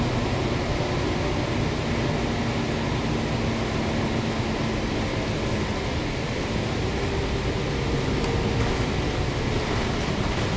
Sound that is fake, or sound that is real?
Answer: real